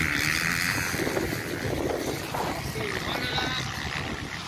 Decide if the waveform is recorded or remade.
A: recorded